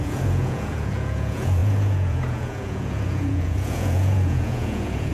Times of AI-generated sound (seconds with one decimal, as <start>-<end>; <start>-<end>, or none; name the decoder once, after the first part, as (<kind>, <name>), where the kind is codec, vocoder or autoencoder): 0.0-5.1 (vocoder, Vocos)